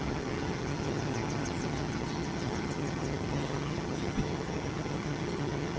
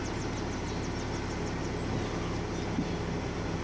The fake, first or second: first